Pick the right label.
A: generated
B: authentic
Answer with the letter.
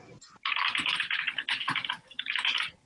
B